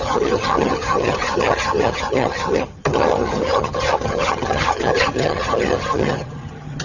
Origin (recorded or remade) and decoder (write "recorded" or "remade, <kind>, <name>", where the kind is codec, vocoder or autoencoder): remade, vocoder, HiFi-GAN